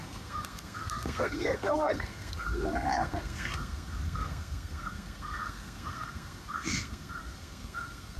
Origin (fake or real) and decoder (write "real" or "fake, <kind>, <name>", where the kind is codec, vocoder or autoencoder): fake, codec, SNAC